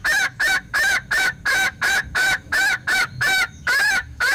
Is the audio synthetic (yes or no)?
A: yes